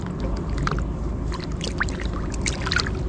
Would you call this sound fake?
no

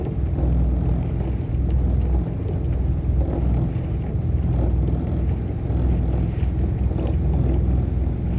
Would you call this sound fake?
no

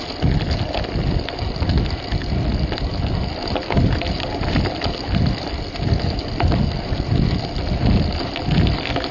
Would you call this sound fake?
no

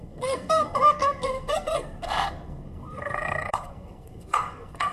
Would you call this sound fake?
yes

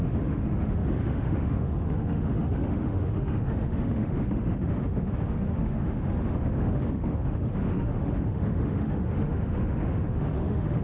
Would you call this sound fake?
yes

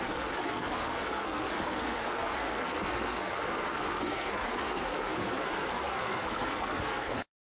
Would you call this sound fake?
yes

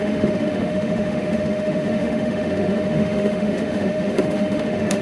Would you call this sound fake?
yes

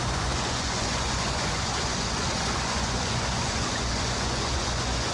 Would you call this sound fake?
yes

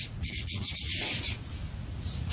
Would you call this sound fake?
yes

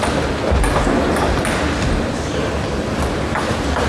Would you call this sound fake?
no